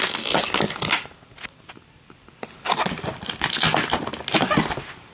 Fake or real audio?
real